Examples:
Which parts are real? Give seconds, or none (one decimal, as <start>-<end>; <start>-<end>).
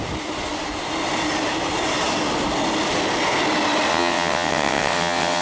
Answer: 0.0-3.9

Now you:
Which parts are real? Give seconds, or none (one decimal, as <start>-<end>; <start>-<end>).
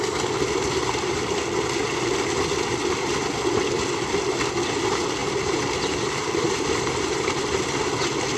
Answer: 0.0-5.2; 7.4-8.4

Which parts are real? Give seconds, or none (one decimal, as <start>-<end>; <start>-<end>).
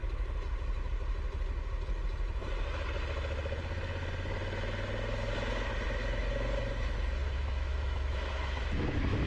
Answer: 0.0-7.2; 8.8-9.3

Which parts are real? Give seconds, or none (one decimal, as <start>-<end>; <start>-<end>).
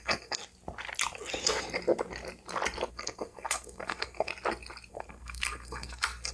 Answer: 0.4-2.9; 4.3-4.9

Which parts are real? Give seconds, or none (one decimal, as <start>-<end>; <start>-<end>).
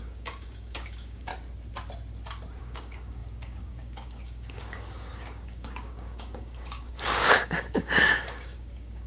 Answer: 1.3-2.6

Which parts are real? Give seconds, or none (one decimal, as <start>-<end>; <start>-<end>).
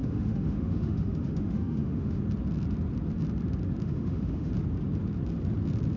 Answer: 2.2-3.8; 4.5-6.0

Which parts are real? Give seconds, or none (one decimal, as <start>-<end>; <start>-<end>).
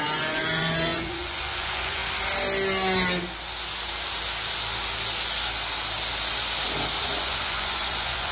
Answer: 2.0-7.0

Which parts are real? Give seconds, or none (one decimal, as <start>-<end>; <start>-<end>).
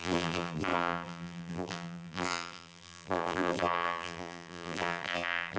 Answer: none